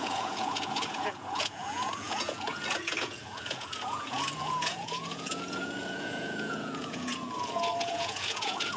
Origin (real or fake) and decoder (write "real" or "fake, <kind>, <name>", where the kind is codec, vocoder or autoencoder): fake, vocoder, Vocos